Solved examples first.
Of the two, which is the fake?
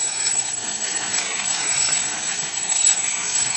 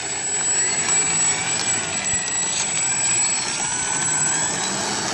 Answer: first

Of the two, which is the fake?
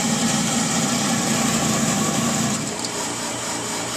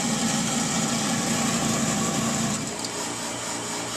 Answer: first